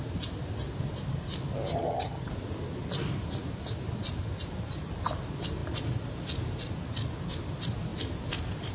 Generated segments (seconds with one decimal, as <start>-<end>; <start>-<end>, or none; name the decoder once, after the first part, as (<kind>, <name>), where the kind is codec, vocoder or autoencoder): 1.7-2.3 (vocoder, HiFi-GAN)